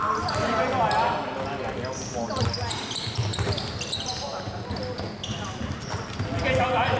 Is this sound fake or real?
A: real